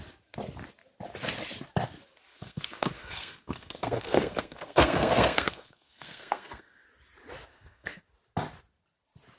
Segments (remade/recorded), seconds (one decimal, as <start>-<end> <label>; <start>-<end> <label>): 0.0-2.3 recorded; 2.3-6.8 remade; 6.8-7.5 recorded; 7.5-8.0 remade; 8.0-9.4 recorded